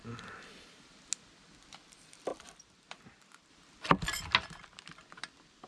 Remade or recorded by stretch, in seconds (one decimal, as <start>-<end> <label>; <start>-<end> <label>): 0.0-5.7 recorded